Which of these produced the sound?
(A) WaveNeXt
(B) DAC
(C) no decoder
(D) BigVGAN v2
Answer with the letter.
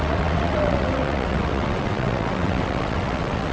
A